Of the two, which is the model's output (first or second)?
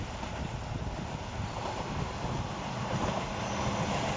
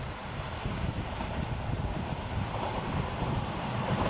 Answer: second